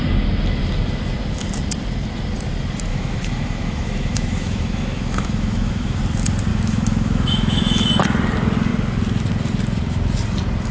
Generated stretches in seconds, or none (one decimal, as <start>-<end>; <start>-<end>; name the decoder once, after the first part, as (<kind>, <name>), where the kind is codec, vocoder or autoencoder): 2.9-6.0 (autoencoder, DAC-VAE); 6.5-7.9